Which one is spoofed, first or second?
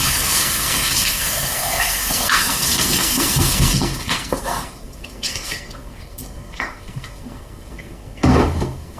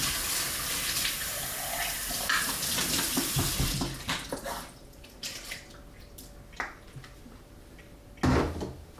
first